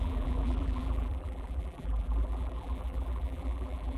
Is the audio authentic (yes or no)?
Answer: no